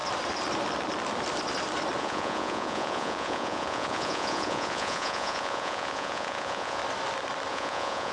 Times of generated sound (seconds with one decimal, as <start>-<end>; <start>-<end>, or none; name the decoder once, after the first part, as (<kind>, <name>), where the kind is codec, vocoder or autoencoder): 2.0-6.8 (vocoder, Vocos); 7.5-8.1